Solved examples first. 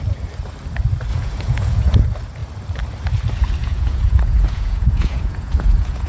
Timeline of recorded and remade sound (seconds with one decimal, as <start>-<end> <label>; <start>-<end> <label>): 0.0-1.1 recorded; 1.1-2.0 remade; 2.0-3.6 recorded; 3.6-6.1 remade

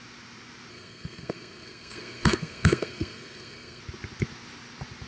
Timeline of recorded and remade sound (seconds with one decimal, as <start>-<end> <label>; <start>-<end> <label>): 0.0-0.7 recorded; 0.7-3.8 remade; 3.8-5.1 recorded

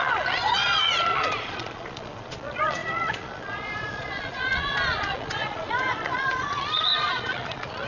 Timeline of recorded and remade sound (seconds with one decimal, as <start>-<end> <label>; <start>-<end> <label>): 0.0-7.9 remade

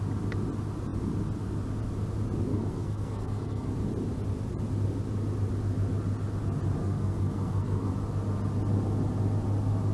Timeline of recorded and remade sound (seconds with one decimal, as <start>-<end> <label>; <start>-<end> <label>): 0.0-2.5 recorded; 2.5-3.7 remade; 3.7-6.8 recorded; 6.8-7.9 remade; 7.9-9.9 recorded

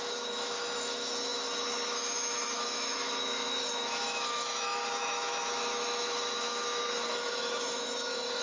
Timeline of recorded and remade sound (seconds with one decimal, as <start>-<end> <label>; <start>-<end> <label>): 0.0-8.4 remade

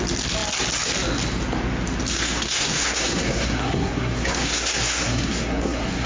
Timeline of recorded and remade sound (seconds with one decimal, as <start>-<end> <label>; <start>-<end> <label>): 0.0-2.1 recorded; 2.1-6.1 remade

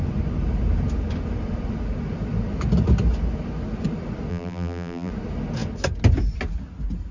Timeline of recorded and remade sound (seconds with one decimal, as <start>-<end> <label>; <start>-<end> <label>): 0.0-4.3 recorded; 4.3-5.1 remade; 5.1-7.1 recorded

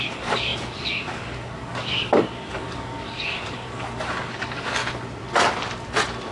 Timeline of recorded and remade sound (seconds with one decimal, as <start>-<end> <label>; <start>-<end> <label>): 0.0-4.8 remade; 4.8-6.3 recorded